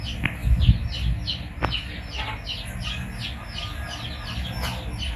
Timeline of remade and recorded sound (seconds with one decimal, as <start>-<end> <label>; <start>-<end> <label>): 0.0-5.2 recorded